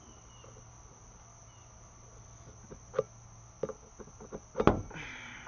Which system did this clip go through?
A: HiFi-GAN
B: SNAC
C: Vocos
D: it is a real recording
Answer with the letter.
D